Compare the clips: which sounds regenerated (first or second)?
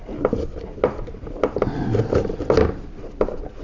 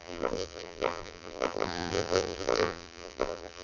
second